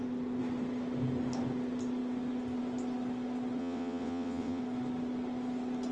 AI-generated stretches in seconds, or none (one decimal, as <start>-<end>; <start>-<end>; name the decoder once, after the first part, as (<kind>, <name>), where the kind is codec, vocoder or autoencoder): 3.6-4.6 (vocoder, WaveNeXt)